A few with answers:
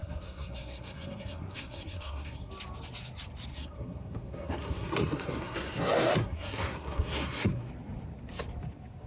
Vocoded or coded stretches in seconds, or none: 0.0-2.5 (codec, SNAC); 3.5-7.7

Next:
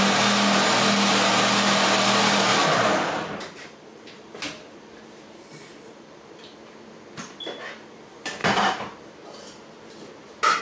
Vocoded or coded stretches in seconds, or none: 2.5-6.6 (vocoder, BigVGAN v2); 8.4-10.6

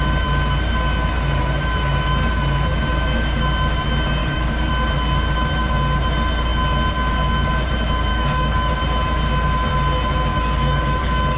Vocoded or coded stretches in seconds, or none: 4.2-4.7 (codec, DAC); 8.1-8.7; 10.3-11.4

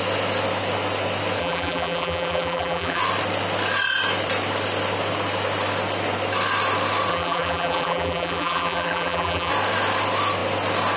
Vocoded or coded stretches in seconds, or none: 1.4-3.0 (vocoder, BigVGAN v2); 7.1-9.5

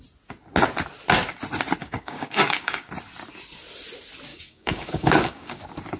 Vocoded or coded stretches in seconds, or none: 1.8-2.9 (codec, DAC); 4.3-5.6

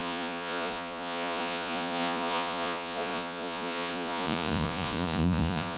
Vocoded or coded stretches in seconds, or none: 0.0-5.8 (vocoder, Vocos)